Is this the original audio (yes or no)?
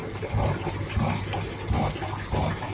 yes